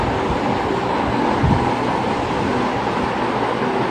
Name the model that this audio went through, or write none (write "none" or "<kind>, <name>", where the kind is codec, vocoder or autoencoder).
none